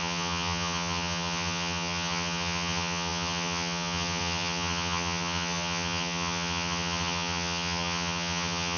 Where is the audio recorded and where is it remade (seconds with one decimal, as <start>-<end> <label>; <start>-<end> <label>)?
0.0-8.8 remade